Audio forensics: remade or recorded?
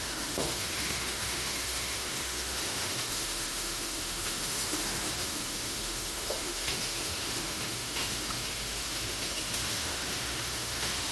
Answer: remade